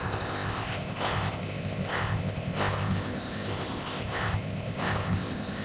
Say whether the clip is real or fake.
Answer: fake